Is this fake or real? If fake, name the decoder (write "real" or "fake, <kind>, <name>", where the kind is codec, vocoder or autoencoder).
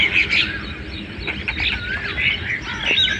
real